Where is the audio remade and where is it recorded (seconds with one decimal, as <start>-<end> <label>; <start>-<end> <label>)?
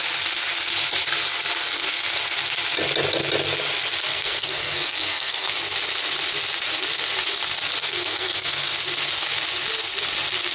0.0-4.1 recorded; 4.1-5.5 remade; 5.5-7.8 recorded; 7.8-8.7 remade; 8.7-10.5 recorded